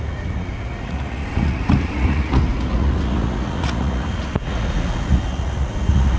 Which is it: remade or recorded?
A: remade